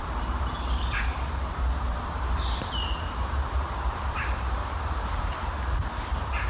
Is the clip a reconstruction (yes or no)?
yes